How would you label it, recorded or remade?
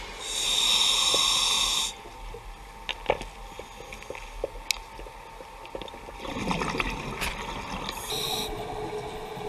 recorded